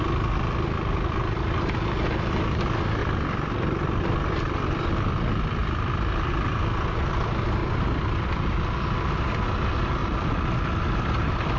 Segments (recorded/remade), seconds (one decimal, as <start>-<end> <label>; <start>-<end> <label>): 0.0-3.0 recorded; 3.0-4.9 remade; 4.9-5.6 recorded; 5.6-6.3 remade; 6.3-7.6 recorded; 7.6-8.1 remade; 8.1-10.0 recorded; 10.0-10.7 remade; 10.7-11.6 recorded